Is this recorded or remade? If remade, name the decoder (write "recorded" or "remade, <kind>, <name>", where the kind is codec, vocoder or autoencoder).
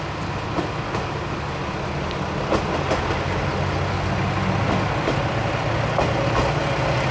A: recorded